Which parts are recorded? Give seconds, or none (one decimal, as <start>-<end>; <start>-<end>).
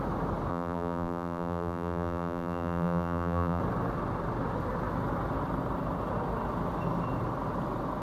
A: 0.0-0.5; 3.6-8.0